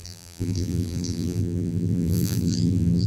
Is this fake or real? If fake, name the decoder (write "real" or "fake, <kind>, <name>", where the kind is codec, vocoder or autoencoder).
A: fake, vocoder, BigVGAN v2